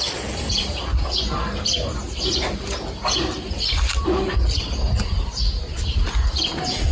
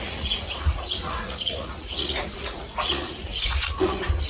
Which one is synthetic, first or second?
second